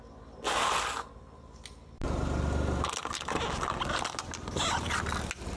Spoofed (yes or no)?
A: no